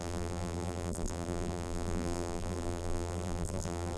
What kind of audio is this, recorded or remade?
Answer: remade